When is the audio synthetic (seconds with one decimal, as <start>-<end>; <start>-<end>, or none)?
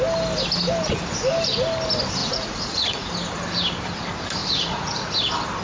2.2-3.1; 4.4-5.1